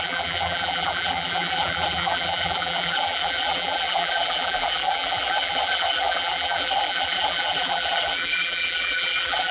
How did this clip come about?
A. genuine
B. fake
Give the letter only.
B